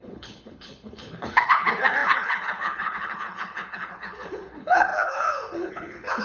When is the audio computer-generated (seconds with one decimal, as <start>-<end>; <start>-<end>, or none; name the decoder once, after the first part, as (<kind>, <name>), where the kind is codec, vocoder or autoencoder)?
0.0-6.2 (codec, HILCodec)